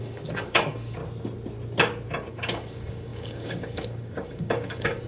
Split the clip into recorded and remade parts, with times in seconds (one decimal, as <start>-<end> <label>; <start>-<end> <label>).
0.0-1.0 remade; 1.0-2.3 recorded; 2.3-5.1 remade